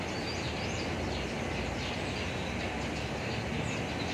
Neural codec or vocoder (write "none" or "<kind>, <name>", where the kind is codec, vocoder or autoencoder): none